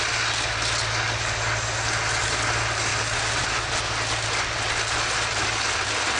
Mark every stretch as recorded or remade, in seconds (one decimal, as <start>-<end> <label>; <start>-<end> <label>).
0.0-6.2 recorded